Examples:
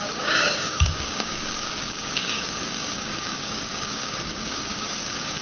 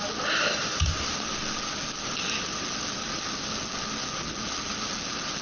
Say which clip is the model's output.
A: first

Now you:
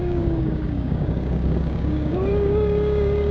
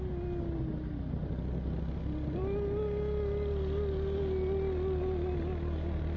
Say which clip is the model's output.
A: first